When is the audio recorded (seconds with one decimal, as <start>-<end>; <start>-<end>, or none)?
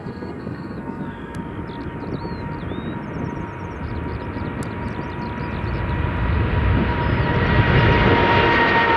1.4-9.0